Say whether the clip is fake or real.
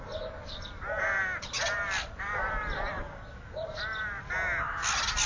real